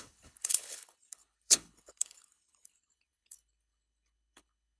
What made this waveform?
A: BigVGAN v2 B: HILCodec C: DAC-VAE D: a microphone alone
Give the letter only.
B